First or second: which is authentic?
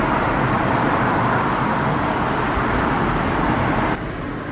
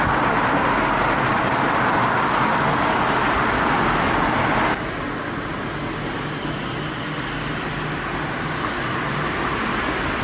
second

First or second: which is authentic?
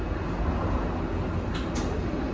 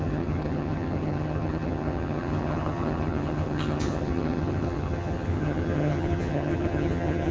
first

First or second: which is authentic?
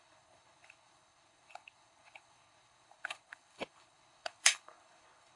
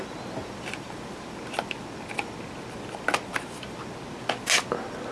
second